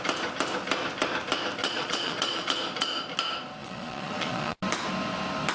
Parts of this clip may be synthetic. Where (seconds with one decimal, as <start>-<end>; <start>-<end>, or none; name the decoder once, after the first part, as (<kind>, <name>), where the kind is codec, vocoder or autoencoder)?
1.6-2.5 (vocoder, Vocos); 3.6-4.6